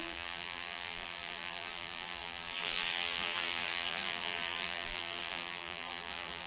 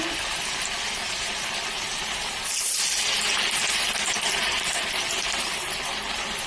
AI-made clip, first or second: first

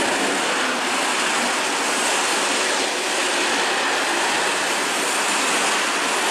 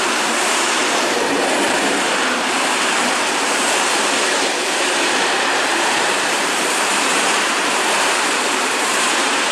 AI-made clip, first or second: second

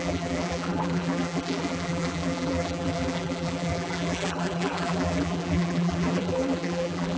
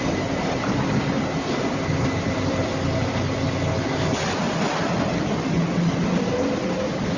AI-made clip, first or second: first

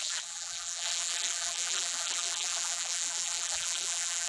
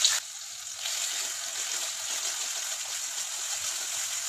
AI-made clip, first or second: first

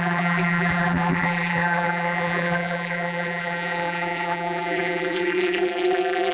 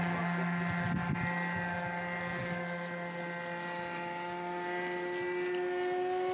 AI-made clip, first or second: first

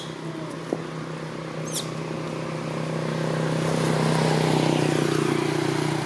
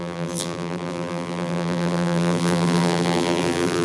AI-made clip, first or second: second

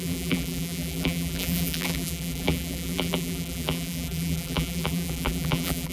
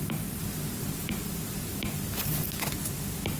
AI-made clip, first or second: first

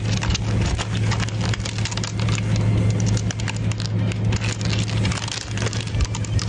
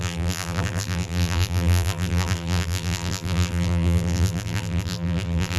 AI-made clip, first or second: second